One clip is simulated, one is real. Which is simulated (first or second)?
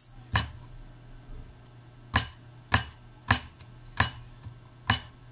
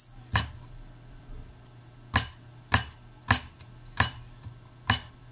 second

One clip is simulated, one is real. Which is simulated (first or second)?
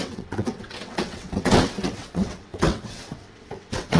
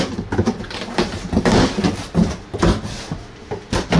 first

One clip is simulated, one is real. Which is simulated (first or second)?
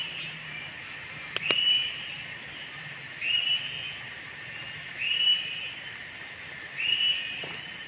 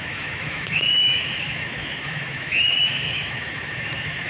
second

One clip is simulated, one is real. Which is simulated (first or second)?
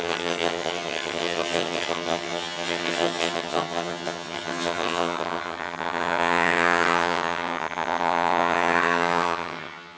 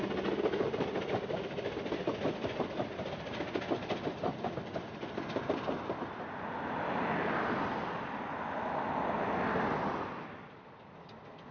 first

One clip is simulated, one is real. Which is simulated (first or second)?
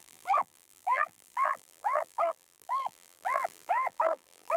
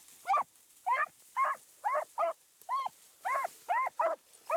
first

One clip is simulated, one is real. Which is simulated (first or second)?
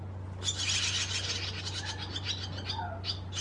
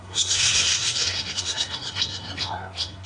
second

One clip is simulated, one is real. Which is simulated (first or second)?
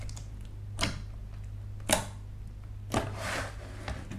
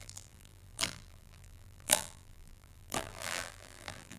second